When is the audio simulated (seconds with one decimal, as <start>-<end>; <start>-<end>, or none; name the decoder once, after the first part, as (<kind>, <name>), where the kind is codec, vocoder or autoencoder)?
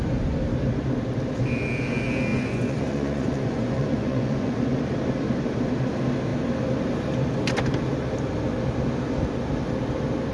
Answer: 2.3-4.5 (vocoder, Vocos)